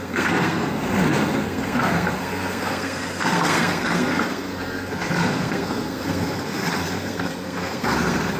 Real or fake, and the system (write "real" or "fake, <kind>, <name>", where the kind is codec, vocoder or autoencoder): fake, codec, SNAC